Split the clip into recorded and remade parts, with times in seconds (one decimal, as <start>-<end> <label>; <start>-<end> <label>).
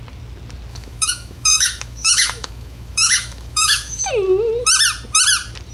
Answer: 0.0-0.7 recorded; 0.7-4.1 remade; 4.1-5.7 recorded